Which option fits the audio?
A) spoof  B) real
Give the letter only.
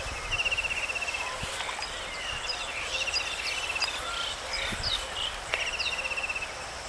B